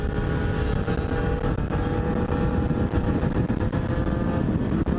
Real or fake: real